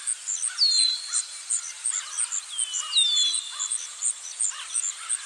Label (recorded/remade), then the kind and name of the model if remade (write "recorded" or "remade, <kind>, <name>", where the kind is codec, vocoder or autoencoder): recorded